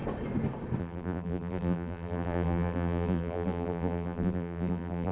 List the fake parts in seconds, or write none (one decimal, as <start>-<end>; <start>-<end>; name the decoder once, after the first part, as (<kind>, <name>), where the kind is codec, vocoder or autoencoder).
0.8-5.1 (vocoder, BigVGAN v2)